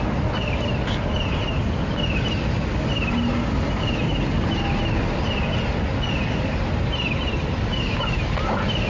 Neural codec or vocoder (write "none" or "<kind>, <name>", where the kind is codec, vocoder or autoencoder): none